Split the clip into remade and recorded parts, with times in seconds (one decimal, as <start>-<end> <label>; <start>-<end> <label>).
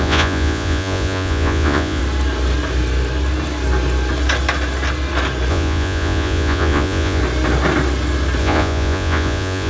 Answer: 0.0-2.0 remade; 2.0-5.5 recorded; 5.5-7.2 remade; 7.2-8.4 recorded; 8.4-9.7 remade